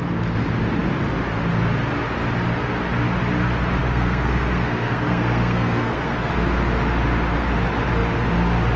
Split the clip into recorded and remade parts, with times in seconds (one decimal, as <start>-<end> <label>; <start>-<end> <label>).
0.0-3.8 recorded; 3.8-6.3 remade; 6.3-8.8 recorded

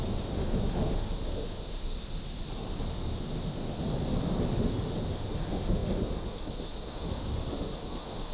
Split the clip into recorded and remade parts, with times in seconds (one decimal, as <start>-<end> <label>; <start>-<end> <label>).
0.0-2.2 remade; 2.2-2.9 recorded; 2.9-3.8 remade; 3.8-4.7 recorded; 4.7-8.3 remade

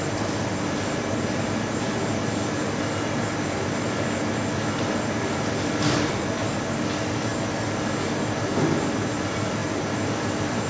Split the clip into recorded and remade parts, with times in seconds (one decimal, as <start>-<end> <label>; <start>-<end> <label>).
0.0-10.7 recorded

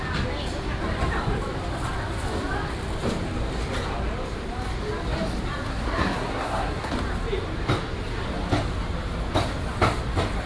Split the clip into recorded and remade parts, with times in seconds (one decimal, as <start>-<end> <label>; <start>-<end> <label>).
0.0-5.7 recorded; 5.7-6.9 remade; 6.9-10.5 recorded

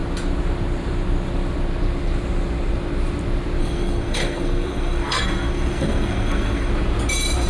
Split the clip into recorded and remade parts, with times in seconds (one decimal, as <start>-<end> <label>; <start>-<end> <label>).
0.0-3.6 recorded; 3.6-6.7 remade; 6.7-7.5 recorded

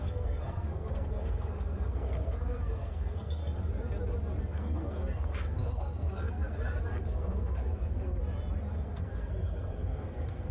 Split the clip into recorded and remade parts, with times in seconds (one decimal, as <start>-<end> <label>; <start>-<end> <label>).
0.0-3.4 remade; 3.4-4.4 recorded; 4.4-8.2 remade; 8.2-8.7 recorded; 8.7-10.5 remade

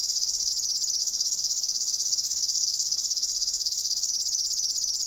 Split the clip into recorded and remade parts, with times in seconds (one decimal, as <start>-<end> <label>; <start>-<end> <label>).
0.0-0.5 remade; 0.5-1.0 recorded; 1.0-4.1 remade; 4.1-5.1 recorded